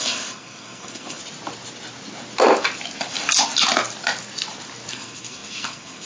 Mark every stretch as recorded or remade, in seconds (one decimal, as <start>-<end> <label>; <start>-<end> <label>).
0.0-1.2 remade; 1.2-4.9 recorded; 4.9-6.1 remade